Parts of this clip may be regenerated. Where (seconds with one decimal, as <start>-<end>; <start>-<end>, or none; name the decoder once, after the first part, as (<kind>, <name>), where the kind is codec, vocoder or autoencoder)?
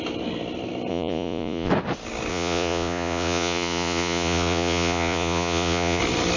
0.9-1.7 (vocoder, Vocos); 2.3-6.0